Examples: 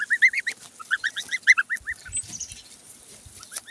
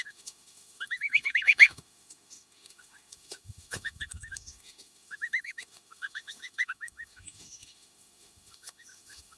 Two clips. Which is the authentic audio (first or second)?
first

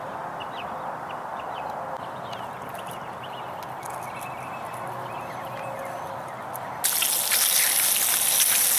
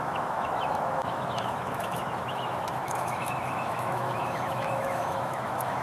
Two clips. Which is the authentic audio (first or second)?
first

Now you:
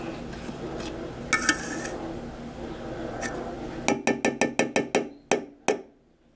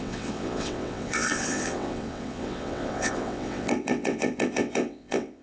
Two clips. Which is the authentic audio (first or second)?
first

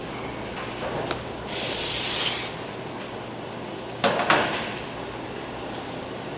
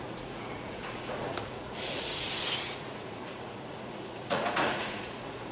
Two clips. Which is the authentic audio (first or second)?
first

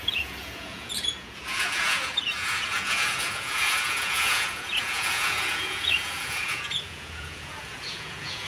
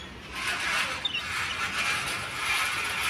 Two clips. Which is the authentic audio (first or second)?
second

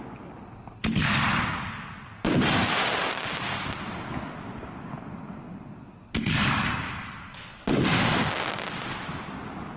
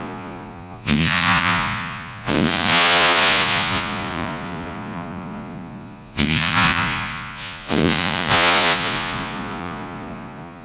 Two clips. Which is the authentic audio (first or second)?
first